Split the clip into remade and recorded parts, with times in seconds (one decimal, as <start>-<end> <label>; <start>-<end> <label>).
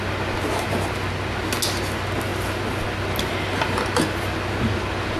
0.0-5.2 recorded